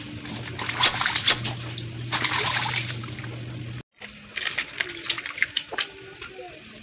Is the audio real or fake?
real